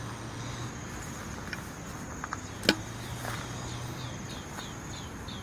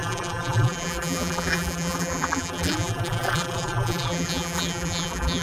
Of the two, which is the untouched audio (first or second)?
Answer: first